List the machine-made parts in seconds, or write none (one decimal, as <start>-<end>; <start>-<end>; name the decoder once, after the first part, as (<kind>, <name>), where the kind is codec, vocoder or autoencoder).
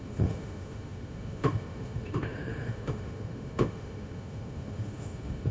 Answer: 0.0-5.5 (autoencoder, DAC-VAE)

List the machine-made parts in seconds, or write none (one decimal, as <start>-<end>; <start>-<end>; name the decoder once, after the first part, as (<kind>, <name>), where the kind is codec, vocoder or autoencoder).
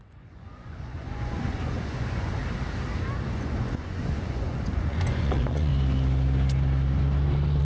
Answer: 0.0-2.4 (vocoder, Vocos); 3.2-5.7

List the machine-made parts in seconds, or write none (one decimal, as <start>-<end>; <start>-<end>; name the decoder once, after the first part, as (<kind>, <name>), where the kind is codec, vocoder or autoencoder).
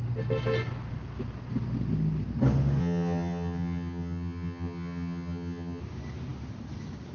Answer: 2.8-5.8 (vocoder, HiFi-GAN)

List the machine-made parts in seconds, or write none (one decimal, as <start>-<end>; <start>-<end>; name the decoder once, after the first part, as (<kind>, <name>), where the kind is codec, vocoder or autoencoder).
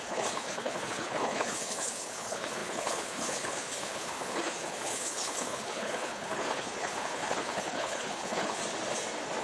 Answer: 0.0-8.6 (codec, HILCodec)